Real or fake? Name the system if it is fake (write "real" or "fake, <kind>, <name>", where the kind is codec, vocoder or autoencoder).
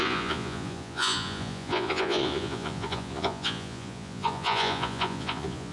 fake, vocoder, Vocos